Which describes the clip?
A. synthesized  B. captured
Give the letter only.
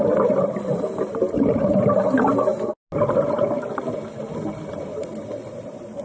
B